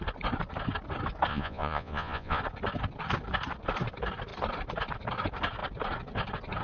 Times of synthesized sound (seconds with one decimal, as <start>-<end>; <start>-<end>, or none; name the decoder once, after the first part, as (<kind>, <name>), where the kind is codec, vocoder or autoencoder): 1.3-2.4 (vocoder, Vocos)